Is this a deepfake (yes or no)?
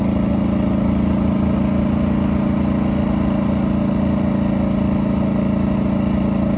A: no